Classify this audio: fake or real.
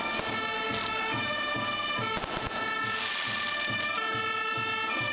real